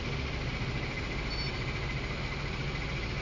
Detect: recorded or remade recorded